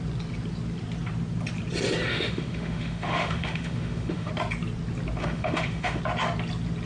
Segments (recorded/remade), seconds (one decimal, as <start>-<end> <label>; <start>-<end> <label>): 0.0-2.1 recorded; 2.1-4.3 remade; 4.3-5.2 recorded; 5.2-6.0 remade; 6.0-6.9 recorded